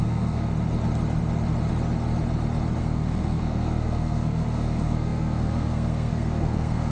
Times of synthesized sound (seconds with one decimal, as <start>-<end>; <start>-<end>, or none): 0.0-0.5; 2.8-6.9